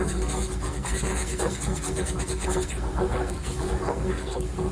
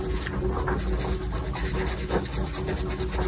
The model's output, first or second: first